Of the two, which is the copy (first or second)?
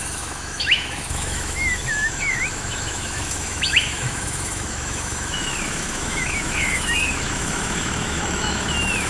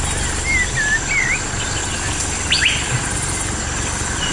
first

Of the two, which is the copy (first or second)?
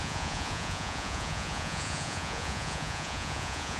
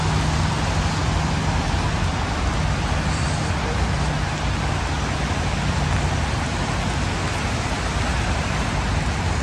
first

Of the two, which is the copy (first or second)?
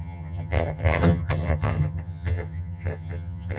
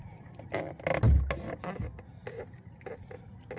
first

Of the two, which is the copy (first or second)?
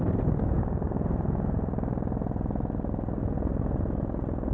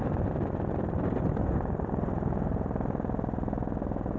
second